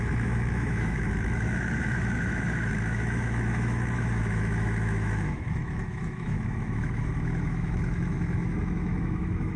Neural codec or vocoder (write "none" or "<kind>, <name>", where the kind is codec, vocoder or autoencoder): autoencoder, DAC-VAE